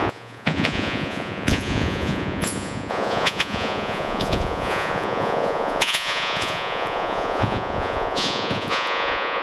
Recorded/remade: remade